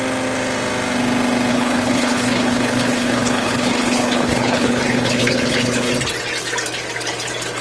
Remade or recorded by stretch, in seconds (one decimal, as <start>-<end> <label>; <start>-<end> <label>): 0.0-1.5 recorded; 1.5-5.9 remade; 5.9-7.6 recorded